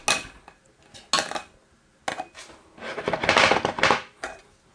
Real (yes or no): yes